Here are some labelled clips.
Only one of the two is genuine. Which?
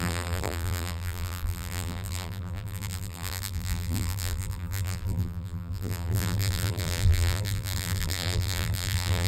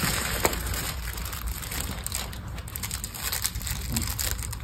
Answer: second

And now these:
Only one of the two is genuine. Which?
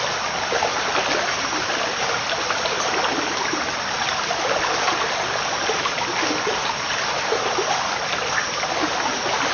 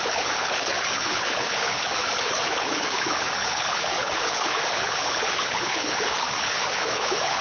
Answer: first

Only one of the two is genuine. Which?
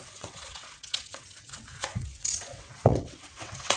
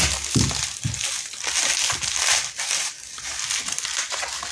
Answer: second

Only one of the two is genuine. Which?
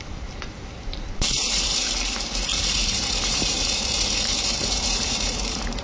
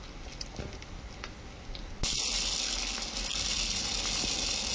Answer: second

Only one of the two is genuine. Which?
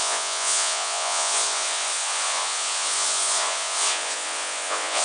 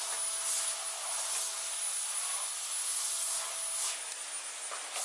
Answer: second